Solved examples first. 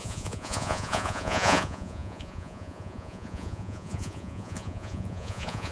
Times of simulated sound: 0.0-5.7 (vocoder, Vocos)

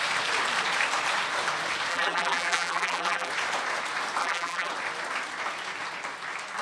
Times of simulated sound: 1.9-3.3 (vocoder, BigVGAN v2); 4.2-4.7

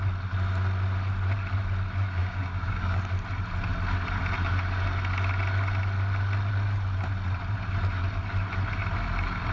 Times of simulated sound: 2.2-3.0 (codec, DAC)

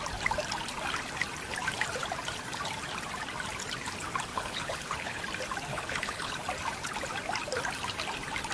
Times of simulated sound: 4.3-5.2 (codec, HILCodec); 5.7-6.3

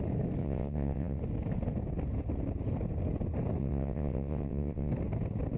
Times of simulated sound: 0.4-1.2 (vocoder, WaveNeXt); 3.6-4.9

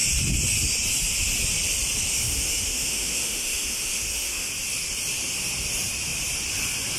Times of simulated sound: 2.1-4.5 (autoencoder, DAC-VAE)